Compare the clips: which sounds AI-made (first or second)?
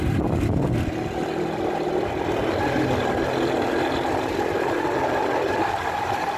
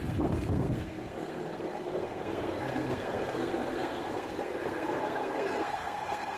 second